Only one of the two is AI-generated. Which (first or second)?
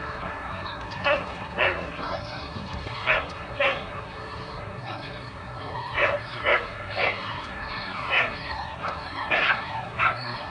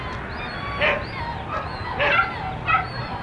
first